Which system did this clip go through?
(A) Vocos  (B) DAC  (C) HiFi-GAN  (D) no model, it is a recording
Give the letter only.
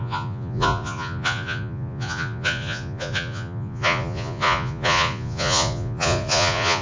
A